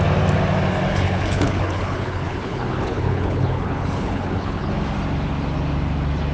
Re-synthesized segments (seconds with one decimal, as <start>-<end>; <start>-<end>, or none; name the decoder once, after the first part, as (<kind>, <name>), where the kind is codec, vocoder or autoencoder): 0.9-4.7 (codec, HILCodec)